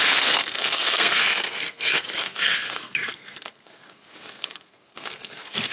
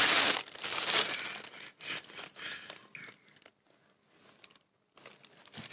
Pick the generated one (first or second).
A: first